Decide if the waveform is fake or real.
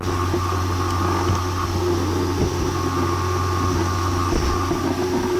real